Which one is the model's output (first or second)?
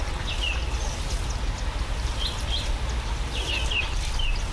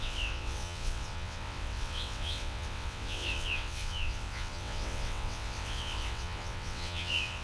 second